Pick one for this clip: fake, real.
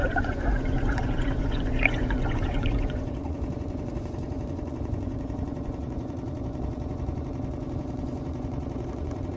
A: fake